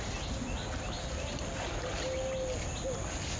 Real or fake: real